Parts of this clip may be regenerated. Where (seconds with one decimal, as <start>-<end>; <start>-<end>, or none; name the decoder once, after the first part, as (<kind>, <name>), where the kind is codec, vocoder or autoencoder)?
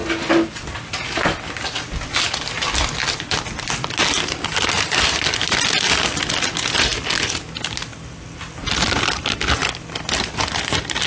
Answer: none